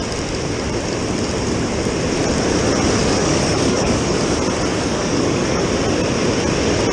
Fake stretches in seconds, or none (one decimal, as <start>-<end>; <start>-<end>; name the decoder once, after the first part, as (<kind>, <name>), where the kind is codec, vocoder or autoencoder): 3.0-4.2 (codec, DAC); 4.7-5.6